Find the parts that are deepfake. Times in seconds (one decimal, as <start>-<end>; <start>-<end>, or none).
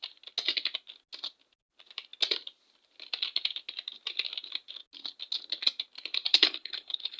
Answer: 6.3-7.2